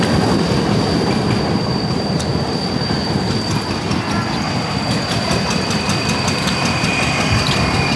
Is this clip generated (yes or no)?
yes